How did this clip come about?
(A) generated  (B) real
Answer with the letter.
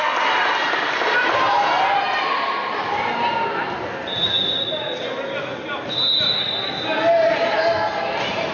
B